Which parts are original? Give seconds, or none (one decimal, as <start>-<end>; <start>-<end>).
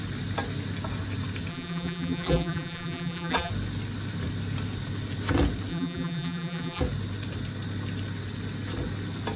0.0-1.5; 3.5-5.7; 6.8-9.4